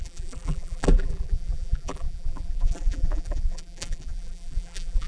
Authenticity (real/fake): fake